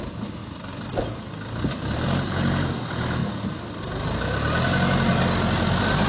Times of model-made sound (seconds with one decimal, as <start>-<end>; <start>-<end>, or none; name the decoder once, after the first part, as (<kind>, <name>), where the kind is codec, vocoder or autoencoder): none